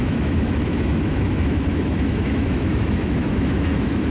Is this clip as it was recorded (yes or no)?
no